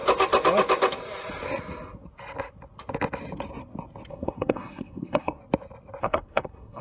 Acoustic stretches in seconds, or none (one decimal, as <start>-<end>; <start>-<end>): 0.0-4.1; 5.4-6.0